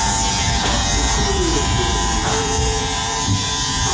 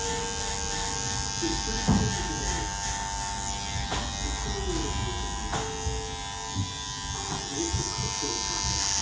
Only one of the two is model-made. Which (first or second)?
first